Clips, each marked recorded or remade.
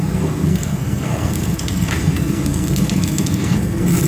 remade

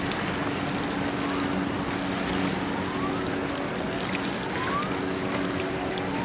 recorded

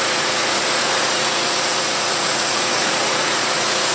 remade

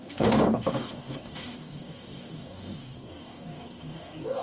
remade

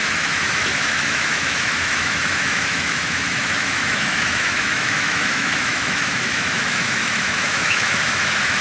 remade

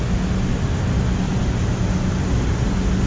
recorded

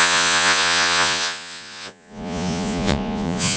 remade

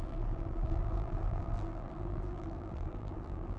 remade